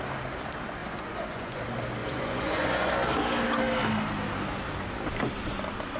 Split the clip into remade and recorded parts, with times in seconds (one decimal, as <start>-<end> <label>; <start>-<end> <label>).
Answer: 0.0-0.8 recorded; 0.8-1.6 remade; 1.6-2.0 recorded; 2.0-2.9 remade; 2.9-6.0 recorded